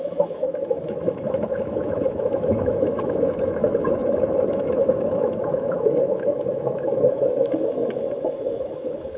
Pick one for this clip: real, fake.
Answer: fake